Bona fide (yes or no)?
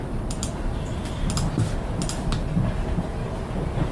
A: yes